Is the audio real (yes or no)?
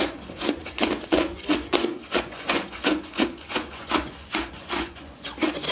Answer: no